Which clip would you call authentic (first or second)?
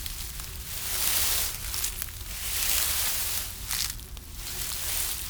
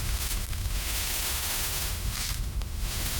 first